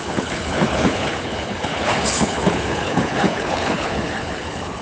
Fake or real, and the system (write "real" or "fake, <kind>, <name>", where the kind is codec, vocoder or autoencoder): fake, codec, HILCodec